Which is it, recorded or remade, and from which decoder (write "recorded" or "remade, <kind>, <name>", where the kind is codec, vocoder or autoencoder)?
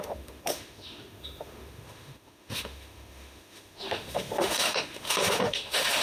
remade, autoencoder, DAC-VAE